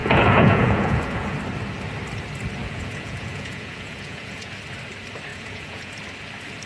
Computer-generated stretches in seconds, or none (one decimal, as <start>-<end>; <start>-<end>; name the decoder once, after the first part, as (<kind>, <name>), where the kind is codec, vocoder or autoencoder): 0.0-1.4 (vocoder, Vocos); 2.6-4.5; 5.3-5.9